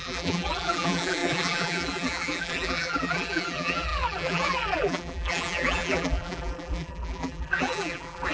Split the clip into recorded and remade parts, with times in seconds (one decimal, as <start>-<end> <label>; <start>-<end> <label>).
0.0-8.3 remade